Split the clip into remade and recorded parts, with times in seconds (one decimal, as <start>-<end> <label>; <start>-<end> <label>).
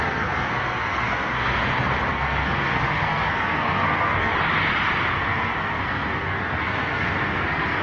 0.0-1.6 remade; 1.6-2.1 recorded; 2.1-4.3 remade; 4.3-5.1 recorded; 5.1-7.8 remade